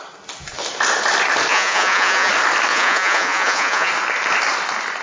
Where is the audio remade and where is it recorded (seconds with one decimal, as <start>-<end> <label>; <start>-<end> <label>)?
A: 0.0-1.5 recorded; 1.5-2.3 remade; 2.3-2.7 recorded; 2.7-3.9 remade; 3.9-5.0 recorded